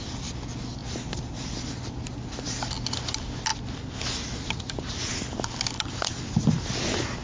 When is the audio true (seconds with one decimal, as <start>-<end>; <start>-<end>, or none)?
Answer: 0.0-7.2